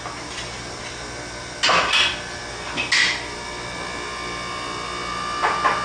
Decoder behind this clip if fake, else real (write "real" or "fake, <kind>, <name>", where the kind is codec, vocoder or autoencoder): real